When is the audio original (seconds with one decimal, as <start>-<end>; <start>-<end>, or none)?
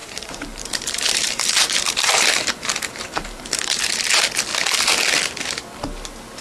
3.8-6.4